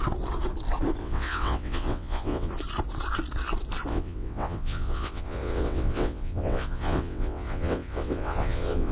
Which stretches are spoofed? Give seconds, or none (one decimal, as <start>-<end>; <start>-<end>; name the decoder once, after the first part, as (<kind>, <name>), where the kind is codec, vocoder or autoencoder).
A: 1.0-2.5 (vocoder, WaveNeXt); 3.9-8.9